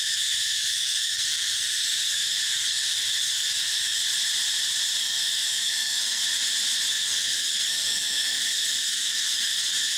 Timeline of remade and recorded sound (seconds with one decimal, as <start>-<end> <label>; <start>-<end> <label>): 0.0-4.0 remade; 4.0-5.0 recorded; 5.0-6.2 remade; 6.2-6.9 recorded; 6.9-10.0 remade